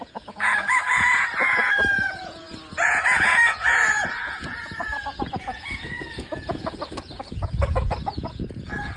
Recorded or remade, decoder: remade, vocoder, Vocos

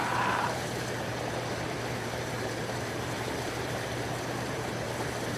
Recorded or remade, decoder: remade, vocoder, BigVGAN v2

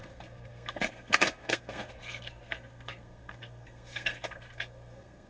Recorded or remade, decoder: remade, codec, SNAC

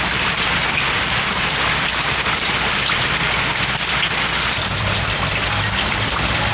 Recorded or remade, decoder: remade, vocoder, BigVGAN v2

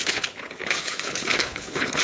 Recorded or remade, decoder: remade, codec, HILCodec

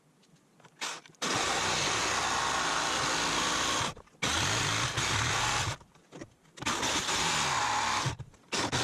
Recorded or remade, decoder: recorded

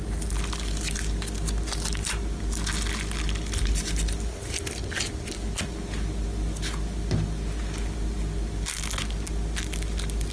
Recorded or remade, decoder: recorded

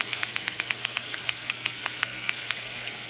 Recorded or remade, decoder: remade, codec, SNAC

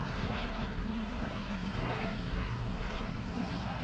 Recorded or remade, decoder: remade, codec, SNAC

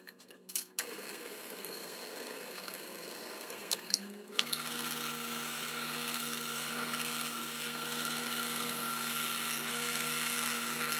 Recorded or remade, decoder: remade, codec, SNAC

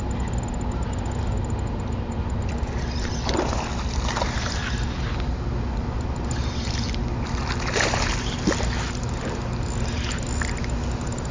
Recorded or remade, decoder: recorded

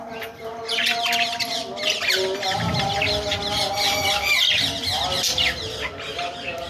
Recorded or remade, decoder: recorded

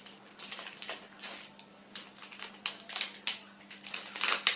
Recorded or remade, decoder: recorded